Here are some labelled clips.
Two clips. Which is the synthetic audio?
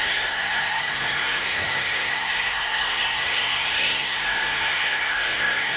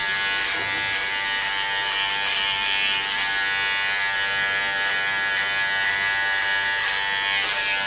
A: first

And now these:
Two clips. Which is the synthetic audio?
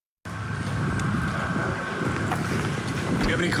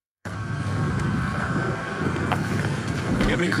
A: second